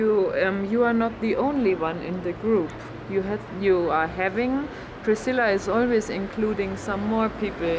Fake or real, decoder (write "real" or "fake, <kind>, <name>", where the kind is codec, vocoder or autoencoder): real